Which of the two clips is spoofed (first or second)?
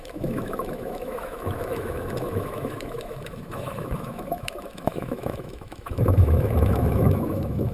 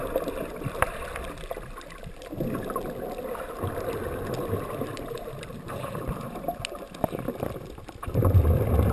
first